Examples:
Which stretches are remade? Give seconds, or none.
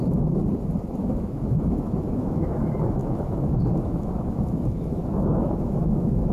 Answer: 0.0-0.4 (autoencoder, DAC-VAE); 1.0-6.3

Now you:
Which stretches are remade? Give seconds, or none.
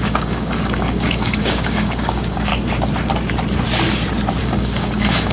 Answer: 0.0-2.5 (codec, DAC); 4.4-5.3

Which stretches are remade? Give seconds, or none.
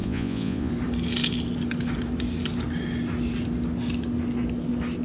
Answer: 0.0-0.7 (vocoder, Vocos)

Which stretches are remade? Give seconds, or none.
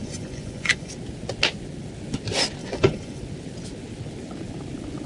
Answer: 0.0-0.9 (vocoder, Vocos); 2.6-3.2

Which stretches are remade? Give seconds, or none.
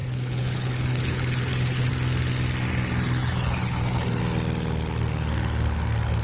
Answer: 0.0-1.9 (codec, HILCodec); 3.2-4.2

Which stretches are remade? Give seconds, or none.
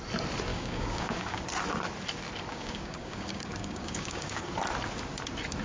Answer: 0.5-1.4 (codec, DAC); 2.5-4.5